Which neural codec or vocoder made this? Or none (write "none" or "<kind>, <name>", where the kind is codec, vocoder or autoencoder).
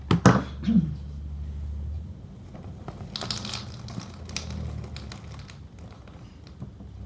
none